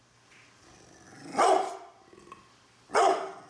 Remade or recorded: recorded